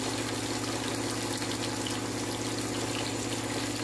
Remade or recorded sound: recorded